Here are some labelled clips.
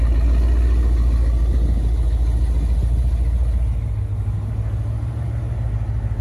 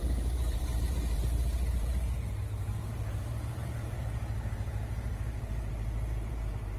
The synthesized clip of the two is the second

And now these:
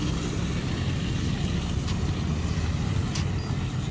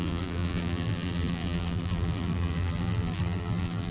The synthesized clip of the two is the second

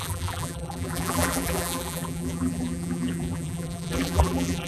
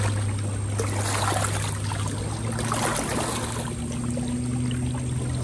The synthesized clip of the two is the first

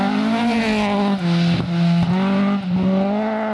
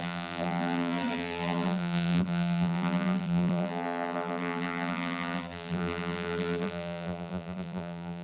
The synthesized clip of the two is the second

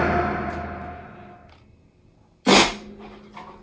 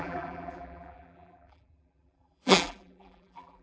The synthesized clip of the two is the second